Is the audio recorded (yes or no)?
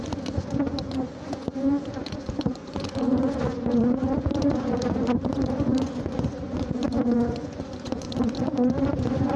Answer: no